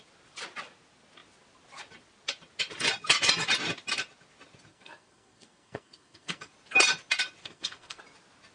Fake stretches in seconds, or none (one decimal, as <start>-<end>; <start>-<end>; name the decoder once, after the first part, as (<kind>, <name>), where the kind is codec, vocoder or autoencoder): 4.7-6.5 (codec, SNAC); 7.4-8.0